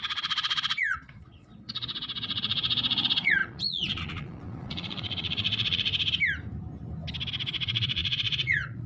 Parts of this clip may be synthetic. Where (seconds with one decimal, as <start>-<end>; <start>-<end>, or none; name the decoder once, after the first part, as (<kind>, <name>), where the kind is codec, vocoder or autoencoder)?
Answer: 0.0-5.9 (vocoder, Vocos); 7.3-8.9